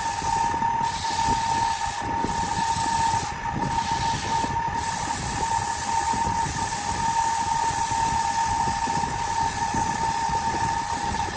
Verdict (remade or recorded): recorded